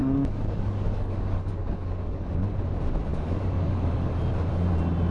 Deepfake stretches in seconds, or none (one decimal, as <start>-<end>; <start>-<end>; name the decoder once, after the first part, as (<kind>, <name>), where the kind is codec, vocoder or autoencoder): 0.0-2.3 (codec, DAC); 3.1-4.1